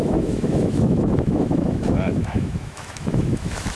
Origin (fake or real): fake